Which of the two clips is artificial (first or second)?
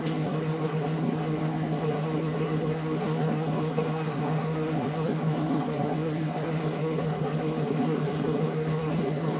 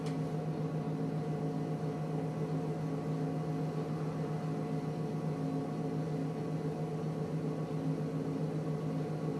first